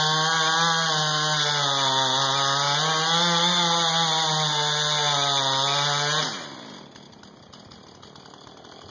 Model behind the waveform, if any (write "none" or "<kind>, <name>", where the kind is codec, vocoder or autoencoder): none